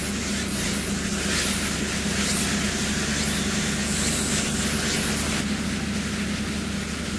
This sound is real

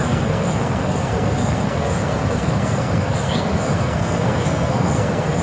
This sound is fake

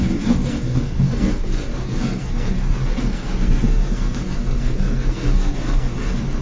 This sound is fake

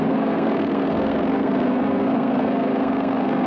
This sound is fake